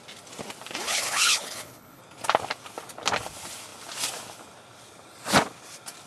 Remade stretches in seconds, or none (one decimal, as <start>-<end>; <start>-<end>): 0.8-2.0